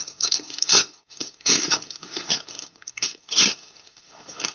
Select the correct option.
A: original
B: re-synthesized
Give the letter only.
B